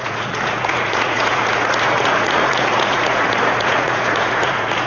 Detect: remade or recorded remade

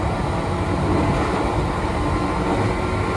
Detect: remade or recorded recorded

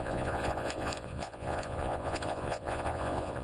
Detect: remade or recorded remade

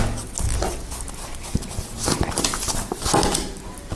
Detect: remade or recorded recorded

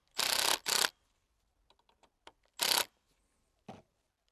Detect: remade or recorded recorded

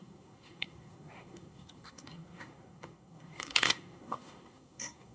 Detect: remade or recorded remade